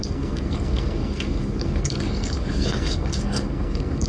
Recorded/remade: remade